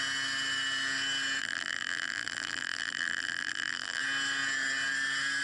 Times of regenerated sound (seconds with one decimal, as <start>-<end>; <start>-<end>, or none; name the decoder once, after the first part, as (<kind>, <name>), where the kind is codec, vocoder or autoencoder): 1.4-4.0 (vocoder, BigVGAN v2)